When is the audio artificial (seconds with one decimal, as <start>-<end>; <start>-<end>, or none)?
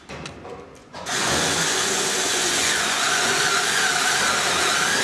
0.8-3.8